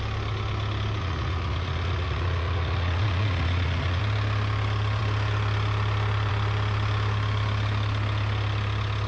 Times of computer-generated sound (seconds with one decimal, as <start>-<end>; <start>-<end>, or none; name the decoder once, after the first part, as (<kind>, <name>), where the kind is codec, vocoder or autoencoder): 1.0-4.0 (vocoder, Vocos)